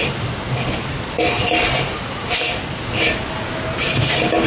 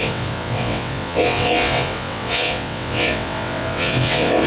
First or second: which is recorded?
first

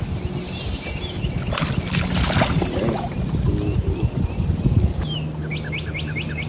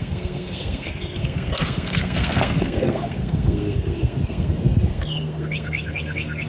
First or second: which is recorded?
first